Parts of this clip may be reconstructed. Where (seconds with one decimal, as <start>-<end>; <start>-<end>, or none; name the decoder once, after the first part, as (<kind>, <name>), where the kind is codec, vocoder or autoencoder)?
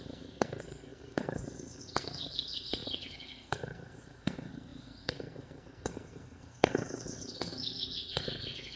0.0-8.8 (codec, SNAC)